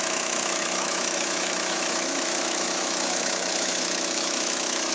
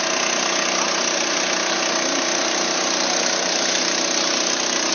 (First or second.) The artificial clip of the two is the first